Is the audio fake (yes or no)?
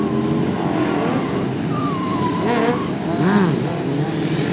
no